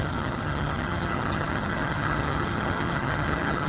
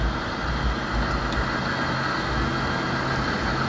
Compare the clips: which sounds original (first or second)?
second